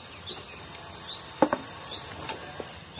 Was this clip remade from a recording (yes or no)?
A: no